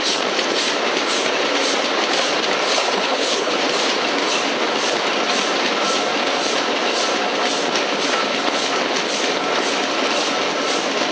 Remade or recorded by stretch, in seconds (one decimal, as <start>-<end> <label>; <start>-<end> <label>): 0.0-2.7 recorded; 2.7-3.6 remade; 3.6-11.1 recorded